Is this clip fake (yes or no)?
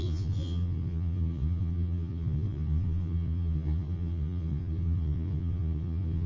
yes